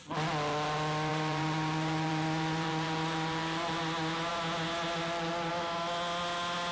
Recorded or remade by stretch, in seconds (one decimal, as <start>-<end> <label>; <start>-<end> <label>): 0.0-1.1 recorded; 1.1-3.8 remade; 3.8-6.7 recorded

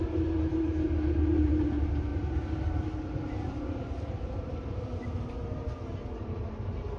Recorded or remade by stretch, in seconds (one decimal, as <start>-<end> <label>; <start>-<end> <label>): 0.0-2.1 remade; 2.1-2.7 recorded; 2.7-5.0 remade; 5.0-7.0 recorded

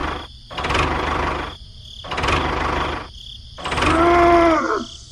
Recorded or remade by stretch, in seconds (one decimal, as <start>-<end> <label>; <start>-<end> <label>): 0.0-5.1 recorded